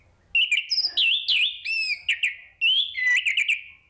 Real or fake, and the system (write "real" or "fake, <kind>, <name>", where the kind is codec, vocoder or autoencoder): real